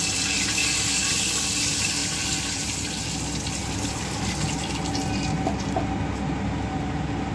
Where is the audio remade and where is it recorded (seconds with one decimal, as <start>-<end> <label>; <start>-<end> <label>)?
0.0-7.3 recorded